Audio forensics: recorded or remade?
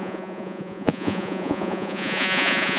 remade